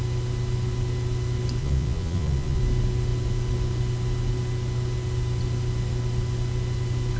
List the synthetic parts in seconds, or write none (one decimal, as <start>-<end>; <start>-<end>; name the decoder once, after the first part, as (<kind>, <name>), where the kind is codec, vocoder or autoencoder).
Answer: 1.6-2.6 (vocoder, Vocos)

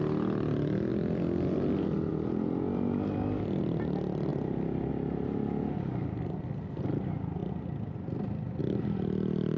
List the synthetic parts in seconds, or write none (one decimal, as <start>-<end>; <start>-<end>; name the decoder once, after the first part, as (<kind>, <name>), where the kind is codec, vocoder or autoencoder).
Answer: none